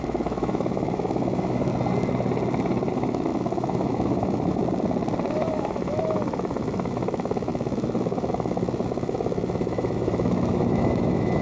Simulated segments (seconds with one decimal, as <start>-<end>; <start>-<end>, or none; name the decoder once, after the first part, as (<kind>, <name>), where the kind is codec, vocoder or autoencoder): 0.0-1.7 (autoencoder, DAC-VAE); 2.9-4.6; 5.3-11.4